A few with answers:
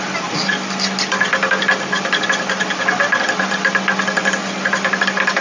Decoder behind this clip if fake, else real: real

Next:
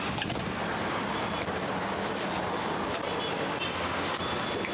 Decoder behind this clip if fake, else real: real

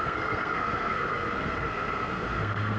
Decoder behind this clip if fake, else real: fake, codec, SNAC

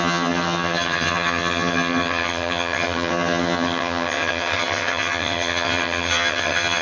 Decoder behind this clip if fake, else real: fake, vocoder, HiFi-GAN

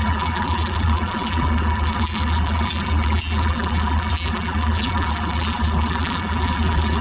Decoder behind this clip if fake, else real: fake, vocoder, BigVGAN v2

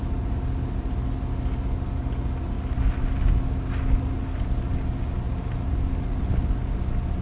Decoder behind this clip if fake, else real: real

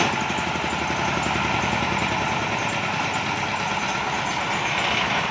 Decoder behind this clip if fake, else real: real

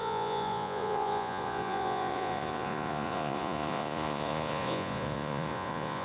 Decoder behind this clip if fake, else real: fake, vocoder, Vocos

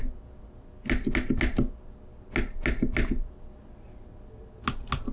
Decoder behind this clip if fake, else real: real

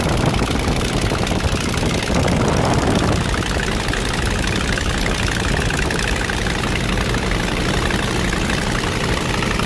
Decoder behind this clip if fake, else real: fake, vocoder, BigVGAN v2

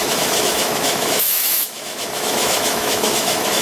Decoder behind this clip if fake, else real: fake, autoencoder, DAC-VAE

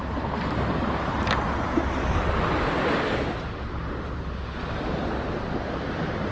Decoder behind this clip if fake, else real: real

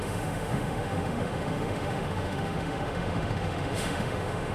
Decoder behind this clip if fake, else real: fake, autoencoder, DAC-VAE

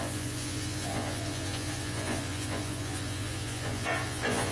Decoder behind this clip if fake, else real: fake, vocoder, Vocos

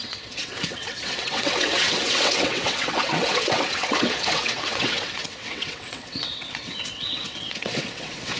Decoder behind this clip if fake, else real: fake, vocoder, WaveNeXt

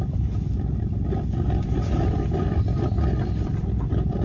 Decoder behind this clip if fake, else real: real